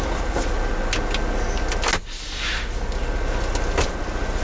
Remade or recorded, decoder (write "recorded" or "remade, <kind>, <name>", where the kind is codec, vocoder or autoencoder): recorded